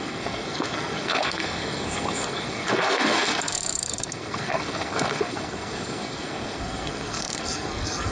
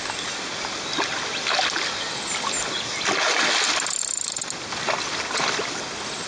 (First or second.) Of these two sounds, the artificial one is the first